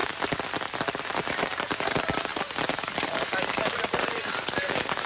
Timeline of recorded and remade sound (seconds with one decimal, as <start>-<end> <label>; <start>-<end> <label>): 0.0-1.3 recorded; 1.3-5.1 remade